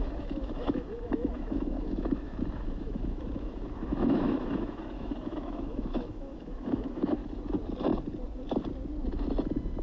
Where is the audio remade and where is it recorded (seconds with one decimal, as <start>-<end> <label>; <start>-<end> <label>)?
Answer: 0.0-7.2 remade; 7.2-9.8 recorded